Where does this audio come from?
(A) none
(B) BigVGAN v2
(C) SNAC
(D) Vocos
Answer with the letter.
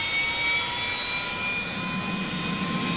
A